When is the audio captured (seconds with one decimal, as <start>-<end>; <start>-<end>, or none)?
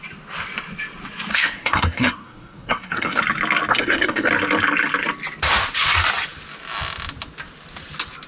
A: 0.0-1.3; 3.2-3.7; 4.3-8.3